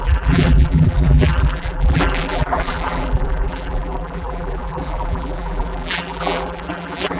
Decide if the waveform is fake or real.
fake